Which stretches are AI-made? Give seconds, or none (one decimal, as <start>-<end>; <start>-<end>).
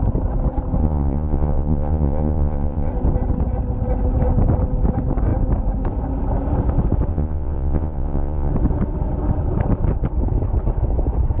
0.8-2.9; 7.1-8.5